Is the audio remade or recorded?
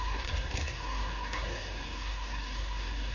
remade